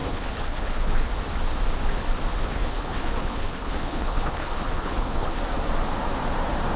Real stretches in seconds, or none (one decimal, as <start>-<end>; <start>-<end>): 1.1-2.4; 5.4-6.8

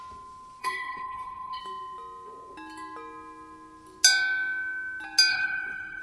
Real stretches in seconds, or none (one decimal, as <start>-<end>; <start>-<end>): 0.0-0.6; 1.6-5.3

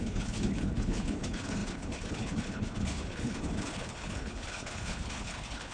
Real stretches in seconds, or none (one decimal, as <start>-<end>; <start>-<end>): none

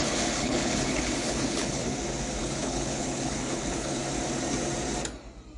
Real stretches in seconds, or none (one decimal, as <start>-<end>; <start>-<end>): 1.8-2.4; 4.0-5.6

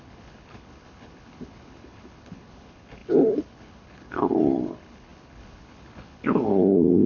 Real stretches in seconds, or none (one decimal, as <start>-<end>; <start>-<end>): none

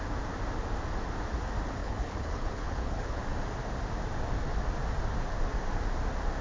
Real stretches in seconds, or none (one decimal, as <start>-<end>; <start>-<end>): 0.0-1.8; 3.2-6.4

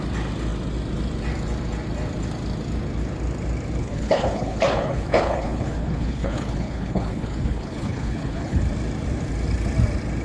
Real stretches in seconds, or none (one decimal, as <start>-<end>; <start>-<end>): 0.0-3.8; 8.6-10.2